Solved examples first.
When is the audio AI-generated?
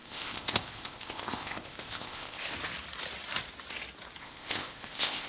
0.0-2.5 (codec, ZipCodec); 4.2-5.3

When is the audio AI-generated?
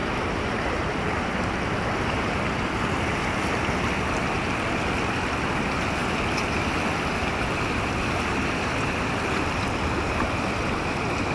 none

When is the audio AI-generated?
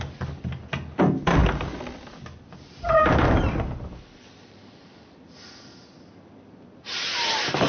none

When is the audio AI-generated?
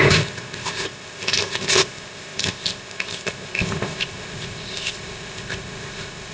0.0-6.3 (codec, ZipCodec)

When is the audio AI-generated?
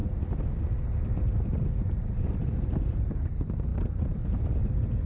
none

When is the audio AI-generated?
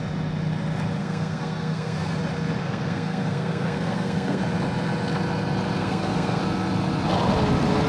1.0-2.2 (codec, SNAC); 2.6-4.4; 5.8-6.4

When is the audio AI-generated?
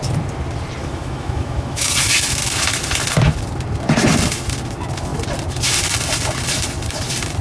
0.8-1.9 (autoencoder, DAC-VAE)